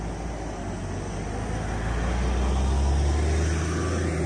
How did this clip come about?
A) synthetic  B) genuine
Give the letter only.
B